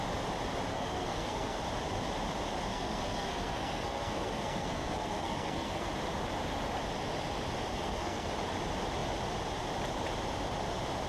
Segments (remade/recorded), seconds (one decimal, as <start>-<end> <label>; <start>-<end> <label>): 0.0-0.7 recorded; 0.7-1.6 remade; 1.6-2.7 recorded; 2.7-5.9 remade; 5.9-7.7 recorded; 7.7-8.3 remade; 8.3-11.1 recorded

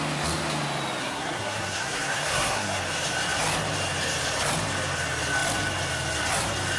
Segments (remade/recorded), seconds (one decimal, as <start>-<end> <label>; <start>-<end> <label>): 0.0-1.0 recorded; 1.0-2.8 remade; 2.8-6.8 recorded

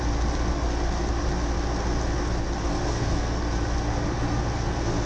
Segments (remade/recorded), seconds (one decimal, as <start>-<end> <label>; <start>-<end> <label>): 0.0-2.7 recorded; 2.7-3.4 remade; 3.4-4.1 recorded; 4.1-5.1 remade

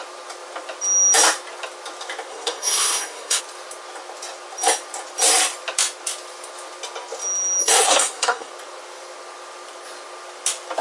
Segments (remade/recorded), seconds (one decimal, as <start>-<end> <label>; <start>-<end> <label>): 0.0-2.3 recorded; 2.3-3.4 remade; 3.4-7.6 recorded; 7.6-8.5 remade; 8.5-10.8 recorded

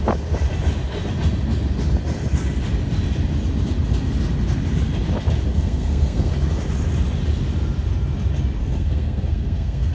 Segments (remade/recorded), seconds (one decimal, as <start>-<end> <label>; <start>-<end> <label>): 0.0-5.5 recorded; 5.5-6.3 remade; 6.3-8.6 recorded; 8.6-9.9 remade

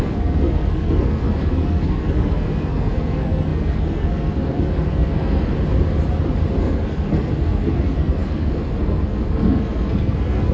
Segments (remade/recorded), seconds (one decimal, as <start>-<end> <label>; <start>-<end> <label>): 0.0-5.5 remade; 5.5-6.6 recorded; 6.6-10.5 remade